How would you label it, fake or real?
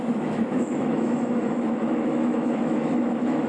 fake